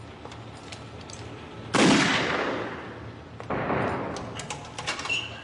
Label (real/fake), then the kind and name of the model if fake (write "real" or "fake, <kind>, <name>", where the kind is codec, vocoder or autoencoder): real